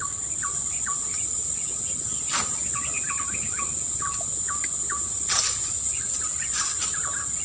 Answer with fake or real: real